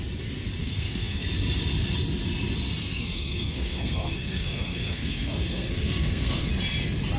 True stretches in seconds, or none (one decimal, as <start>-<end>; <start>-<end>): 0.0-0.6; 1.2-2.8; 6.5-7.2